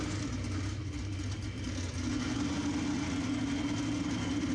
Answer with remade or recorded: recorded